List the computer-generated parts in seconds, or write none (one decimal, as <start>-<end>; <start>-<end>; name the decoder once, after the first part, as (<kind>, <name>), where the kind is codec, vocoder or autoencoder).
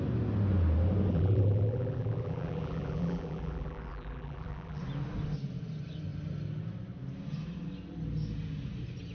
1.1-4.8 (vocoder, BigVGAN v2)